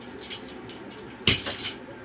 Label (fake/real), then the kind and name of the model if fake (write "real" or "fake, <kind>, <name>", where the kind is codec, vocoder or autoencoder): real